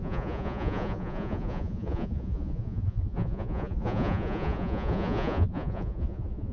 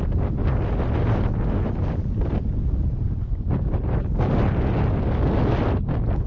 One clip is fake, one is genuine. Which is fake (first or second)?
first